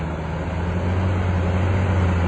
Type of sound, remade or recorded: recorded